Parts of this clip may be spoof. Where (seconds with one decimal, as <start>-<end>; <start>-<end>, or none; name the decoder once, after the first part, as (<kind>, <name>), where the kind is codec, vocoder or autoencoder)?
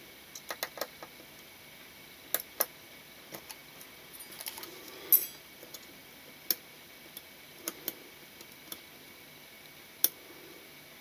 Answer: none